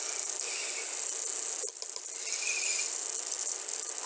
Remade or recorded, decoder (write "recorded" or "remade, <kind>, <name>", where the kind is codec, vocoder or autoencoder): recorded